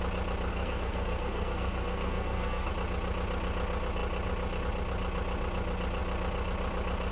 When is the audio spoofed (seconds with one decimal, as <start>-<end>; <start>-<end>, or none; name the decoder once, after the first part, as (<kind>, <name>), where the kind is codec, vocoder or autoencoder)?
0.5-2.7 (codec, SNAC)